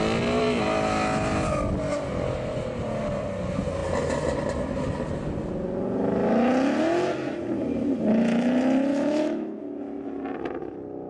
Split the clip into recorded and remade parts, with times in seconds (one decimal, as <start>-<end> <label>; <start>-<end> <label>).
0.0-8.9 recorded; 8.9-9.6 remade; 9.6-11.1 recorded